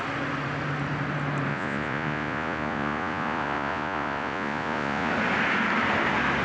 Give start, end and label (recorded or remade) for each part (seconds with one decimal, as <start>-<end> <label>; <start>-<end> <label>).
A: 0.0-1.5 recorded; 1.5-5.1 remade; 5.1-6.4 recorded